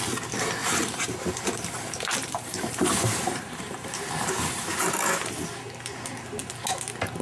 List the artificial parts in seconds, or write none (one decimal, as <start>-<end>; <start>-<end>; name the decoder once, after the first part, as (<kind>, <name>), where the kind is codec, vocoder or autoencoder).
0.6-4.9 (vocoder, BigVGAN v2)